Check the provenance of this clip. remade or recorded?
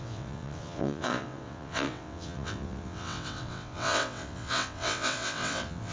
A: remade